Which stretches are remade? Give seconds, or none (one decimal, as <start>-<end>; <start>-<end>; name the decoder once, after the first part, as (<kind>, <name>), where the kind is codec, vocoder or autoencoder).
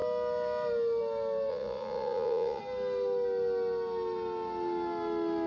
1.5-2.6 (vocoder, Vocos)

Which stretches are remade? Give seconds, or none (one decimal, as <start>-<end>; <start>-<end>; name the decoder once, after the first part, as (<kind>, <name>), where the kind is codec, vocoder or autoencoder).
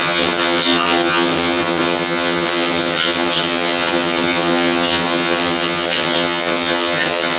0.0-7.4 (vocoder, HiFi-GAN)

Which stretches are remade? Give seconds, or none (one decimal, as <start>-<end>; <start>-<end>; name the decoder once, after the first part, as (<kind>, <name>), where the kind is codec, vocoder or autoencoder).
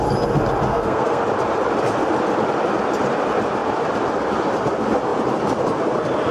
0.7-1.2 (codec, SNAC)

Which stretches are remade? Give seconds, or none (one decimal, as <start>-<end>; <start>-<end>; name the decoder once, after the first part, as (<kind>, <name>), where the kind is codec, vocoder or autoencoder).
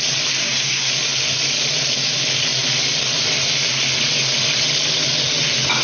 0.4-0.9 (codec, DAC)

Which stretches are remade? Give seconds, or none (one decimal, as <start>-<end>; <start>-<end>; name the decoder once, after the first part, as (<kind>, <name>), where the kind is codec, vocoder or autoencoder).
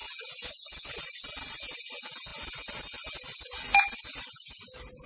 none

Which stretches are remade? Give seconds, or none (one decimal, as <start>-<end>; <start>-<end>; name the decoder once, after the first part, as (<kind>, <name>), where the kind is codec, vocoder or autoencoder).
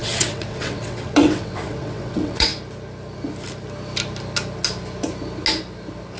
0.0-2.5 (vocoder, WaveNeXt)